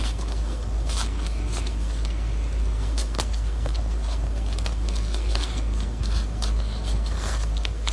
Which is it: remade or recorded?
remade